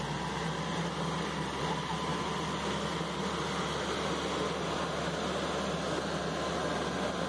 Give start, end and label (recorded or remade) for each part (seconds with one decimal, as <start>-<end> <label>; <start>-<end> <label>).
0.0-7.3 recorded